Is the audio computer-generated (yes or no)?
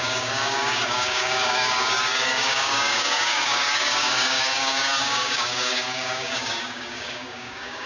yes